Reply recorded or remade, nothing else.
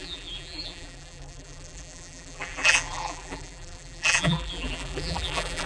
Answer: remade